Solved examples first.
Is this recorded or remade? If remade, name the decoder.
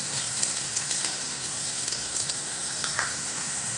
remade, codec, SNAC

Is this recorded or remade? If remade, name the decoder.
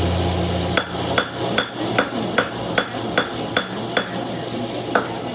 recorded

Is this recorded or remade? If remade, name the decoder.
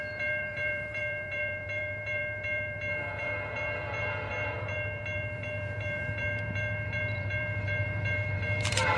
remade, vocoder, BigVGAN v2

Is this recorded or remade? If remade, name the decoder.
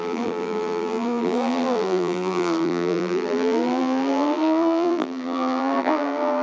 remade, vocoder, BigVGAN v2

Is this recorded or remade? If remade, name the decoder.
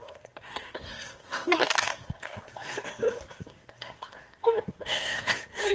remade, codec, SNAC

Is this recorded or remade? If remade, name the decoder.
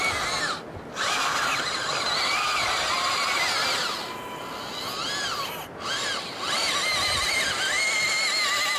recorded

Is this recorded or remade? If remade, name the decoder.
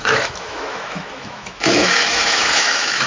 remade, autoencoder, DAC-VAE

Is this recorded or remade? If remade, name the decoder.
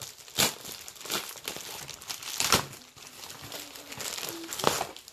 recorded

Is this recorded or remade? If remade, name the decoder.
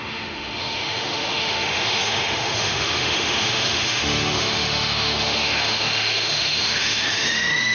remade, autoencoder, DAC-VAE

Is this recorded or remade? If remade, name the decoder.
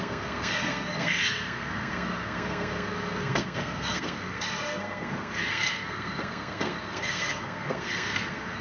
remade, codec, SNAC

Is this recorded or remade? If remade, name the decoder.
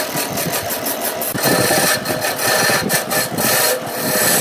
recorded